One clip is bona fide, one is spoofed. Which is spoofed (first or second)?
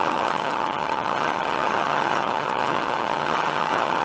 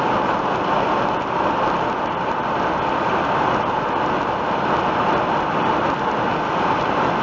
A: first